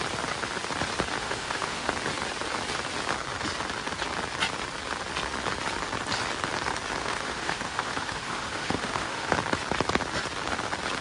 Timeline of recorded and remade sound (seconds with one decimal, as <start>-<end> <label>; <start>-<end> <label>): 0.0-1.2 recorded; 1.2-1.9 remade; 1.9-7.0 recorded; 7.0-9.3 remade; 9.3-11.0 recorded